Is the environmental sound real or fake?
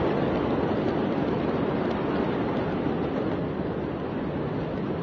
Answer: real